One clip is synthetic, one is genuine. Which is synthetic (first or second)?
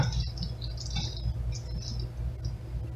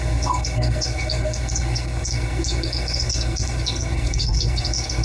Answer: second